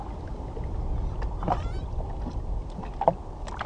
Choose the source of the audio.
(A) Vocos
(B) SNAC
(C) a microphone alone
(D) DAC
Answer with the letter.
C